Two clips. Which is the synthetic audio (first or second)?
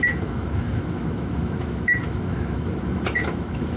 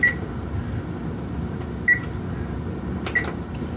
first